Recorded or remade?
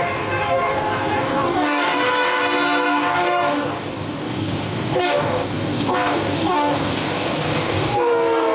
remade